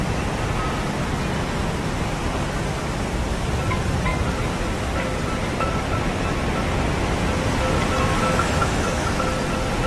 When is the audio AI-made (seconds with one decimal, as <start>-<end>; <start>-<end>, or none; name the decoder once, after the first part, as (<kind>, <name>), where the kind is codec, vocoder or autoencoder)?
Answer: 8.6-9.2 (autoencoder, DAC-VAE)